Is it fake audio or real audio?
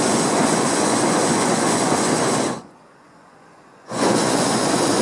fake